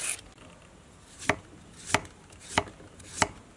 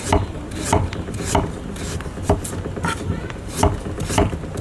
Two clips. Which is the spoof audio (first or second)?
second